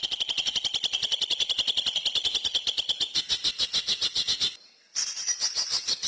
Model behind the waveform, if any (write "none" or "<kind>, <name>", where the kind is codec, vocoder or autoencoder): none